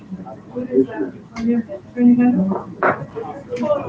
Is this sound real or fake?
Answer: real